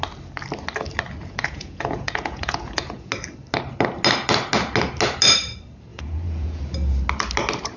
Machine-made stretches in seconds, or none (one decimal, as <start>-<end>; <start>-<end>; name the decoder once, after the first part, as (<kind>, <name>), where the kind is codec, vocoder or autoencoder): 1.2-3.1 (vocoder, Vocos); 5.9-6.6